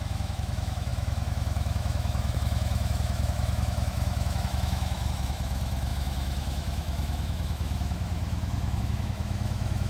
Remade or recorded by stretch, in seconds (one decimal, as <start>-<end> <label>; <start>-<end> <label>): 0.0-9.9 remade